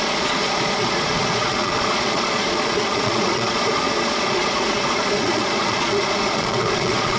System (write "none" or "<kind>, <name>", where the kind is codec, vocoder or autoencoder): vocoder, Vocos